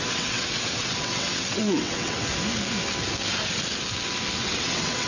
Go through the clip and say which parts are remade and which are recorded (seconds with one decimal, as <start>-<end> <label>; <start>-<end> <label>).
0.0-2.3 remade; 2.3-4.4 recorded; 4.4-5.1 remade

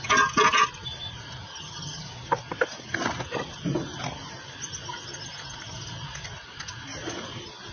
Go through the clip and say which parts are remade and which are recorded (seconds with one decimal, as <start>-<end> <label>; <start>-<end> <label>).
0.0-1.5 recorded; 1.5-2.0 remade; 2.0-7.7 recorded

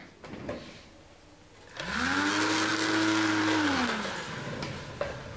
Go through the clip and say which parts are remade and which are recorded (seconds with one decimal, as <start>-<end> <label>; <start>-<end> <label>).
0.0-5.4 recorded

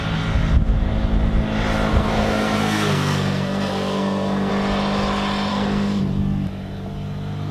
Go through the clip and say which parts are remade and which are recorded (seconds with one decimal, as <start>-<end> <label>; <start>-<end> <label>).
0.0-1.9 recorded; 1.9-4.5 remade; 4.5-5.5 recorded; 5.5-6.0 remade; 6.0-7.5 recorded

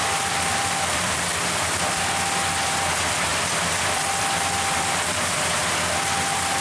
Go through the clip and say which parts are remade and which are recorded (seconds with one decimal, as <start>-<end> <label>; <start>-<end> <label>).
0.0-0.5 recorded; 0.5-2.0 remade; 2.0-3.3 recorded; 3.3-5.6 remade; 5.6-6.6 recorded

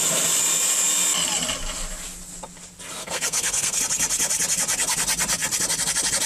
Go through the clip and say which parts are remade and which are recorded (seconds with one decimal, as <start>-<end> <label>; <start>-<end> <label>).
0.0-3.0 recorded; 3.0-3.8 remade; 3.8-6.3 recorded